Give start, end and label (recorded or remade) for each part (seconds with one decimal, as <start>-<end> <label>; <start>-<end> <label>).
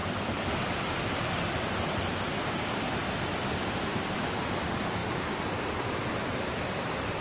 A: 0.0-2.0 remade; 2.0-6.2 recorded; 6.2-7.2 remade